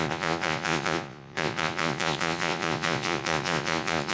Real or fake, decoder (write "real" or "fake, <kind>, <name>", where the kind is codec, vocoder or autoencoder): fake, vocoder, Vocos